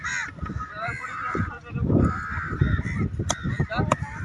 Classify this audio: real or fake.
fake